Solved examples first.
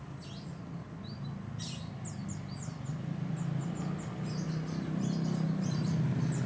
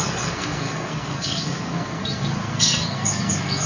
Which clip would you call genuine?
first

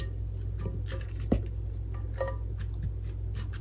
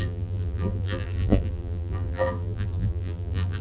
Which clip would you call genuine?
first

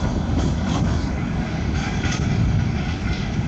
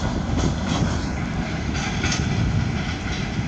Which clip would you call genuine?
second